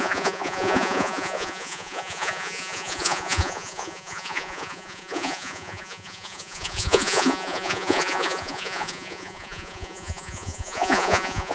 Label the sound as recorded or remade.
remade